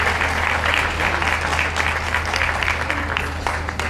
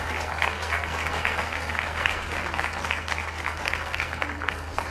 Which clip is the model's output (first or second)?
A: second